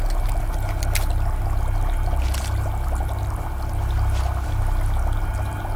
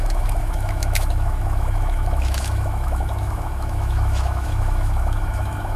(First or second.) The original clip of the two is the first